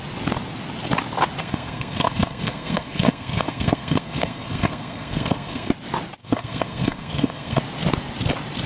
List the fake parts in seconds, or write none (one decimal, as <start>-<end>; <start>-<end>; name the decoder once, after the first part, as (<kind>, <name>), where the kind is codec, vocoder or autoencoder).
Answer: 1.4-5.7 (codec, SNAC); 6.2-7.6